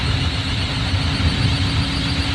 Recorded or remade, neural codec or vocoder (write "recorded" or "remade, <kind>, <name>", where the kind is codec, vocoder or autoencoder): recorded